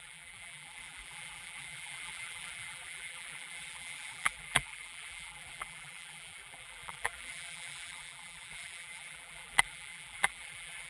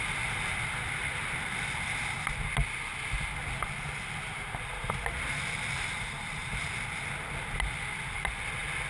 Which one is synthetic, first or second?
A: first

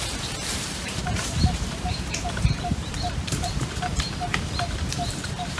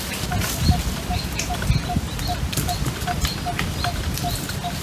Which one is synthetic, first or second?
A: first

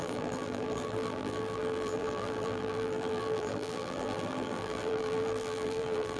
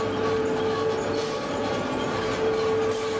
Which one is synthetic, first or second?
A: first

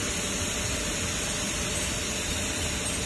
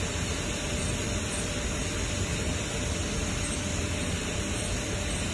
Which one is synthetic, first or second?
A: first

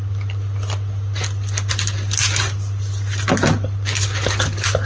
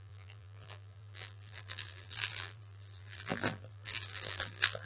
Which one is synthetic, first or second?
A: second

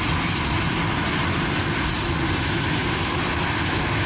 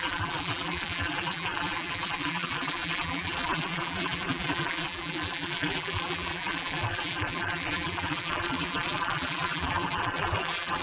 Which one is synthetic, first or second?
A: second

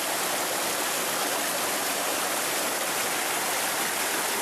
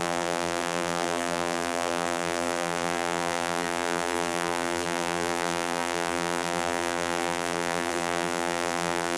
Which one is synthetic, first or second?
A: second